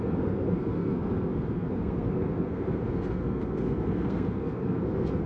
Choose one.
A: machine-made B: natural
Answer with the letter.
A